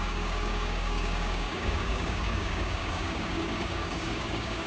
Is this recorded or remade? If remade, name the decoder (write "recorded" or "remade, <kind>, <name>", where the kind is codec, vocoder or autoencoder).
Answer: remade, codec, DAC